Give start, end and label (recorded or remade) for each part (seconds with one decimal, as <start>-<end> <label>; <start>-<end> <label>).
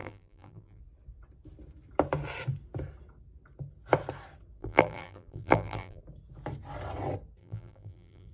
0.0-0.8 remade; 0.8-4.6 recorded; 4.6-6.0 remade; 6.0-7.4 recorded; 7.4-8.3 remade